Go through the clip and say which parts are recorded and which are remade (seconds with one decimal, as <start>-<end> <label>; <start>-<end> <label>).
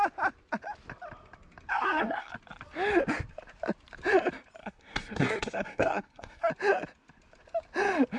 0.0-1.7 recorded; 1.7-2.3 remade; 2.3-4.6 recorded; 4.6-6.5 remade; 6.5-8.2 recorded